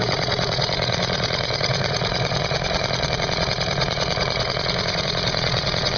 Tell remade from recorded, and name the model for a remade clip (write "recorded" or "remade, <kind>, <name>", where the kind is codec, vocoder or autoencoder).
remade, vocoder, Vocos